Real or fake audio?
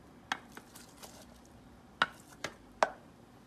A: real